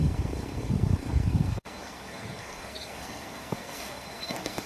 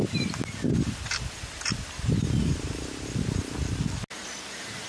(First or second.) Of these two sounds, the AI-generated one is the first